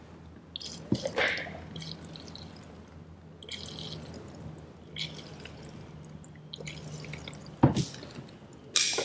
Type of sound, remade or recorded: recorded